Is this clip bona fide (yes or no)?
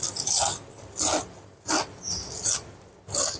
yes